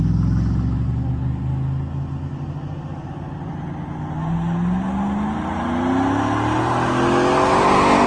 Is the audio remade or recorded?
recorded